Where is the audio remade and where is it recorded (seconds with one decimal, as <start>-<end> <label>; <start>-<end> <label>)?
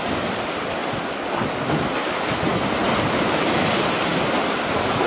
0.0-5.1 recorded